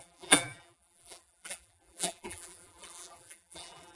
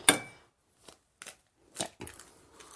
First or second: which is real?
second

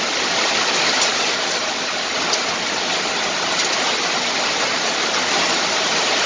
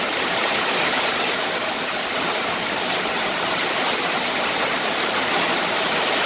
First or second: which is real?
first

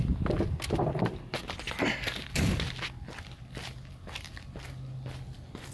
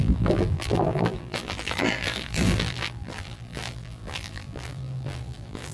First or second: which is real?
first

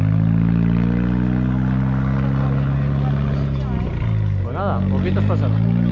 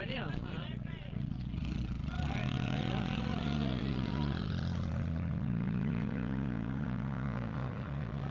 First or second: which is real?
first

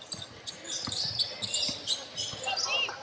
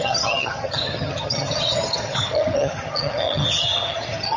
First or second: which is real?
first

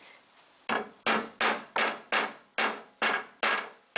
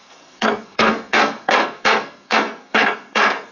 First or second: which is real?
first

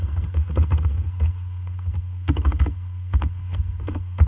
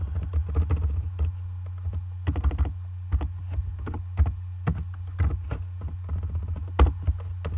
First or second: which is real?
second